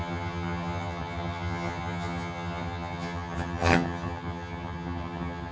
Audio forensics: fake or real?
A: fake